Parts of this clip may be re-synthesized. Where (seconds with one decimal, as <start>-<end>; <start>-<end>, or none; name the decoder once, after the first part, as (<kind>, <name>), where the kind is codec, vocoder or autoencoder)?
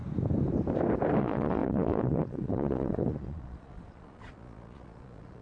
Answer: 1.2-5.4 (vocoder, Vocos)